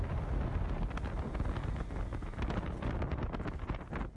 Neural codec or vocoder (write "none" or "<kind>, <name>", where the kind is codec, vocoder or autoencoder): none